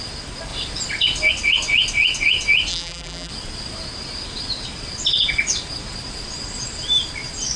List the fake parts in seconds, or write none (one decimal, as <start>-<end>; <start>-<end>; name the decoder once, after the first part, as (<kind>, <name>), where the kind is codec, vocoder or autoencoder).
2.7-3.3 (vocoder, BigVGAN v2)